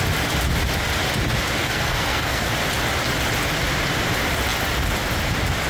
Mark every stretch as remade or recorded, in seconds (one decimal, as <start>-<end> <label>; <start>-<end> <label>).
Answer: 0.0-1.6 recorded; 1.6-2.5 remade; 2.5-5.7 recorded